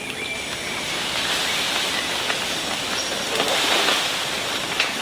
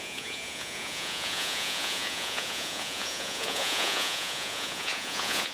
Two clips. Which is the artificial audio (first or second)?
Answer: second